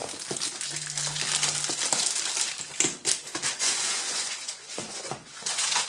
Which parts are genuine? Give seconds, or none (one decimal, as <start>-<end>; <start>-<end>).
0.0-3.5